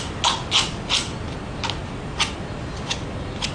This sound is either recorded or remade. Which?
recorded